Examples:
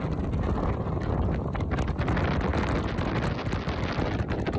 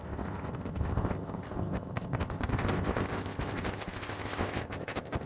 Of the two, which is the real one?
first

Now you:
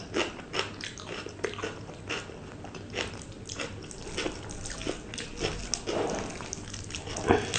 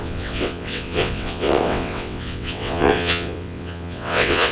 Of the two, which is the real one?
first